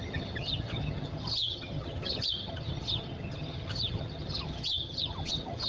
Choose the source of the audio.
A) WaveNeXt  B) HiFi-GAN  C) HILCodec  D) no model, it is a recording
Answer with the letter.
B